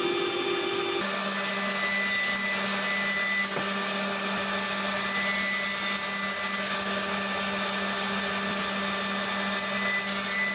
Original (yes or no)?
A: yes